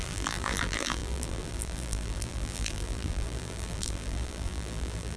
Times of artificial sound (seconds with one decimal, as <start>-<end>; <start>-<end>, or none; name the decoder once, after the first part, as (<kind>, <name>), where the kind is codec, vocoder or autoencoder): 0.0-5.2 (vocoder, BigVGAN v2)